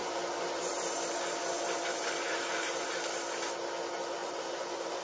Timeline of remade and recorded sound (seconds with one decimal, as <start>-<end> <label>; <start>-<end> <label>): 0.0-3.0 remade; 3.0-4.2 recorded; 4.2-5.0 remade